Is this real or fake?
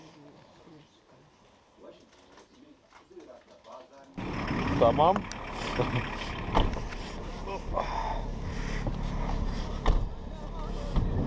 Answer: real